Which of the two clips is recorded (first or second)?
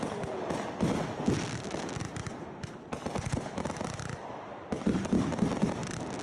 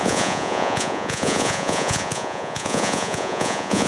first